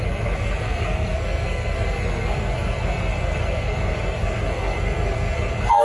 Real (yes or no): no